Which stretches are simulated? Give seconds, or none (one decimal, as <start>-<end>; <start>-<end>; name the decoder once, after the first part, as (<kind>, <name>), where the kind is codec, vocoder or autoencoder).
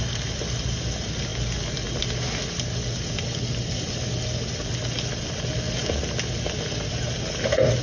none